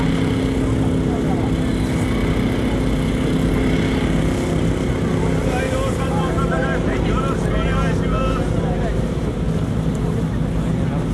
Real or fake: real